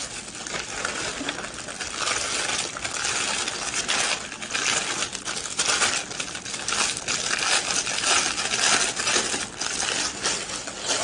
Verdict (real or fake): real